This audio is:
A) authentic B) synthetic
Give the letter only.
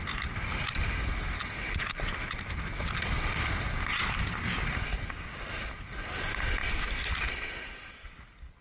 A